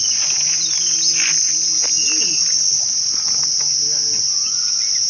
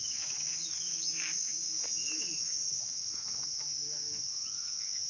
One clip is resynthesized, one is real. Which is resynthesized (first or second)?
second